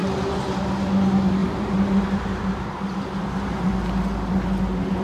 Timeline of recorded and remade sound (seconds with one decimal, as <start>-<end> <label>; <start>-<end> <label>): 0.0-0.6 remade; 0.6-1.4 recorded; 1.4-3.7 remade; 3.7-5.0 recorded